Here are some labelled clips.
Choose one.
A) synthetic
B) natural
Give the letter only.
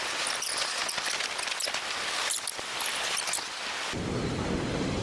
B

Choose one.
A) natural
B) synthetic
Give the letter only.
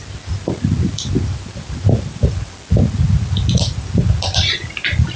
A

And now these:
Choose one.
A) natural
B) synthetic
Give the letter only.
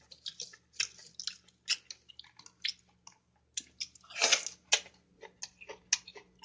A